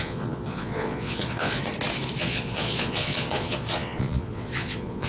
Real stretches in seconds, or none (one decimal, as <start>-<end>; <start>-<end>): 1.6-2.2